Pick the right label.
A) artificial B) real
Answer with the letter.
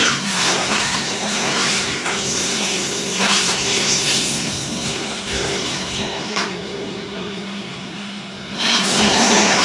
A